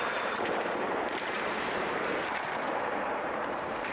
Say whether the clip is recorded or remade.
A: remade